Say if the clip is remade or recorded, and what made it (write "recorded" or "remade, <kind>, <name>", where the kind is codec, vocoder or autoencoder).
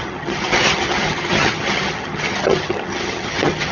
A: remade, vocoder, HiFi-GAN